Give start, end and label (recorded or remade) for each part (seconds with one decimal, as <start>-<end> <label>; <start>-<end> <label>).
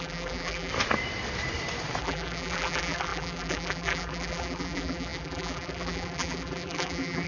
0.0-0.7 remade; 0.7-2.0 recorded; 2.0-7.3 remade